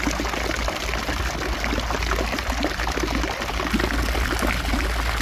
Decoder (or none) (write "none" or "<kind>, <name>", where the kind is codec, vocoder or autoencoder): none